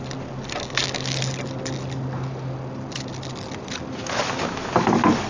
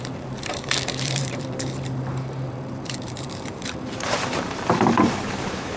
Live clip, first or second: first